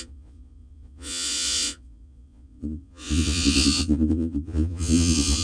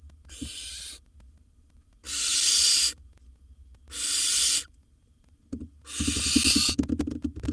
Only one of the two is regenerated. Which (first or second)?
first